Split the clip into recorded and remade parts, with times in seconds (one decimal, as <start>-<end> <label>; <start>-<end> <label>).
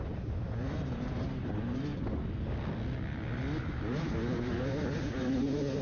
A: 0.0-1.9 remade; 1.9-3.6 recorded; 3.6-5.8 remade